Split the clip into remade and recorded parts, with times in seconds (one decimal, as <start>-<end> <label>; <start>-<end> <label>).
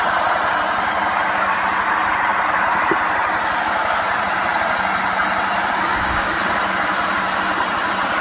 0.0-5.9 recorded; 5.9-6.4 remade; 6.4-8.2 recorded